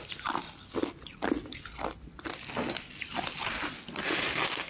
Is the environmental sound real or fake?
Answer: real